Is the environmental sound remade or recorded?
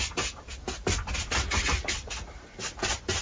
recorded